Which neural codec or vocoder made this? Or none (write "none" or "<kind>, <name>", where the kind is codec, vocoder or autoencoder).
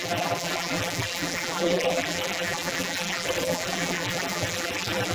vocoder, BigVGAN v2